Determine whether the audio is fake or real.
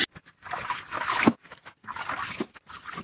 real